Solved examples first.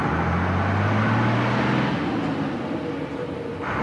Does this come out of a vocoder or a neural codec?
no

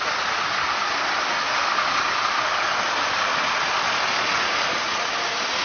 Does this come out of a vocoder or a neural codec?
no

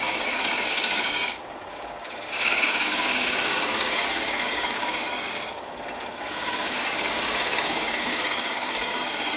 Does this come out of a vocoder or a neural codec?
yes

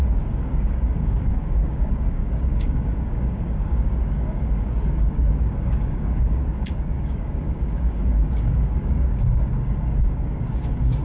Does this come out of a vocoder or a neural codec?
yes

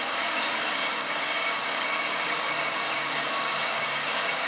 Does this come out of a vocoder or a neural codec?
yes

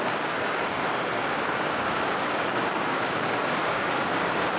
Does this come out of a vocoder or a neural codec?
yes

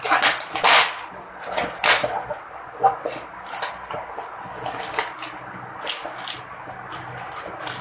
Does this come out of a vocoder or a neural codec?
no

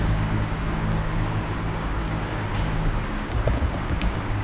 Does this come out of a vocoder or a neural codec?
yes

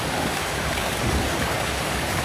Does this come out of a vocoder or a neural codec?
yes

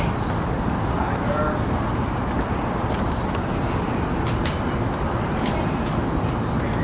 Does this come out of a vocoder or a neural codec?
no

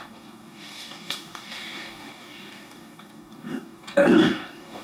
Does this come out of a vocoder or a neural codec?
yes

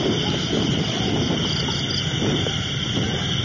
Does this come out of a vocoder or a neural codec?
no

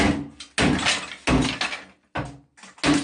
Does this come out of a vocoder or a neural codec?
no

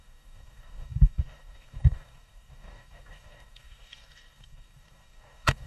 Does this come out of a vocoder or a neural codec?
yes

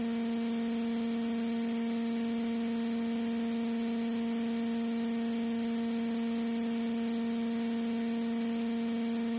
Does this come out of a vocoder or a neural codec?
no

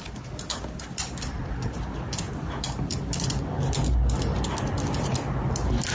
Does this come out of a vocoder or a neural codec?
no